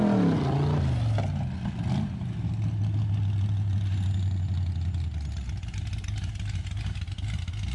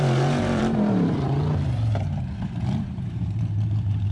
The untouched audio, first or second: first